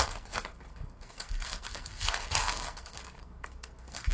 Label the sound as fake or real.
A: fake